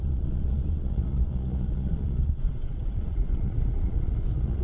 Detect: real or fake fake